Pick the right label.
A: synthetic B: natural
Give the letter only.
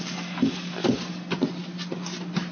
B